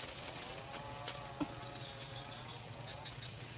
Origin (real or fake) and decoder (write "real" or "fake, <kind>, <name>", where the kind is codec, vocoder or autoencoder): fake, vocoder, WaveNeXt